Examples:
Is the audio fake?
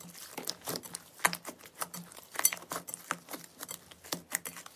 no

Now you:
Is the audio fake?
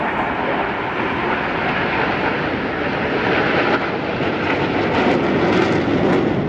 no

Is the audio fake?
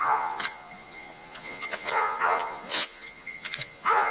yes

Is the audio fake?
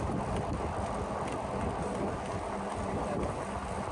no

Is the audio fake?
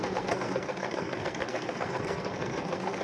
yes